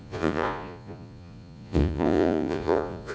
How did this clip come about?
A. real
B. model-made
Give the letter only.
B